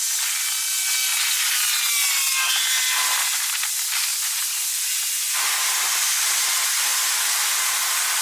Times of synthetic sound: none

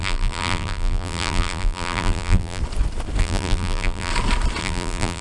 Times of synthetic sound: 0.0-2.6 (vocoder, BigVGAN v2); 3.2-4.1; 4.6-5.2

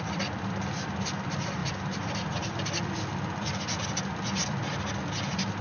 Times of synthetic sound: 1.6-4.8 (vocoder, BigVGAN v2)

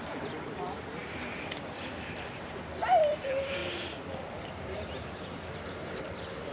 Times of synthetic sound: 0.0-6.5 (vocoder, BigVGAN v2)

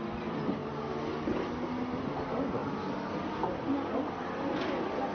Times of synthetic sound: 2.6-3.3 (vocoder, BigVGAN v2)

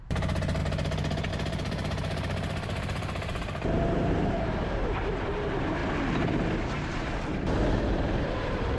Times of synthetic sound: 0.0-0.6 (vocoder, BigVGAN v2); 1.3-5.8; 7.7-8.8